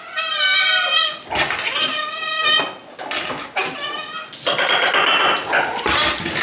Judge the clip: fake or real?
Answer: real